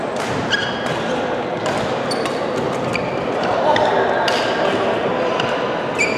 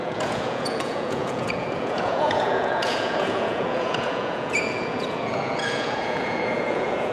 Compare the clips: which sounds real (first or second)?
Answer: first